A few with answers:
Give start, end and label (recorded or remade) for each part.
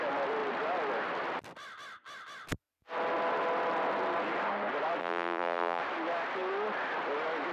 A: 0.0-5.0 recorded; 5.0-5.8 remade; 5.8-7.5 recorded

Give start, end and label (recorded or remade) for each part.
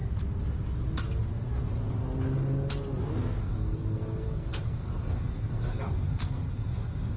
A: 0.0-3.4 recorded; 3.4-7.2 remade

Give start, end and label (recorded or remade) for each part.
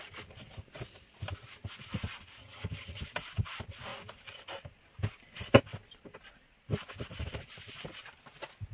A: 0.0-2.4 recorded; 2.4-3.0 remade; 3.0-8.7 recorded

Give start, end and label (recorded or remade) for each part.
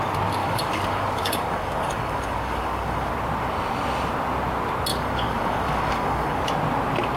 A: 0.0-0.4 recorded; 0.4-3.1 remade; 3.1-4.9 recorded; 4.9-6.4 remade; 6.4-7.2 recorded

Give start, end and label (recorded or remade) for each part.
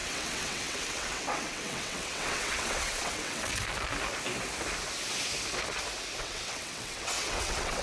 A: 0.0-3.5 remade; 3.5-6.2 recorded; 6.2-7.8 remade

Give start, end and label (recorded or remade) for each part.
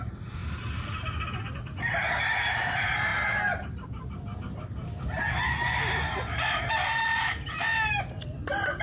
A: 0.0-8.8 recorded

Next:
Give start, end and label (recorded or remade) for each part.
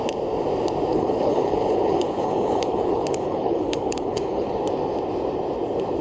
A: 0.0-0.9 recorded; 0.9-4.5 remade; 4.5-6.0 recorded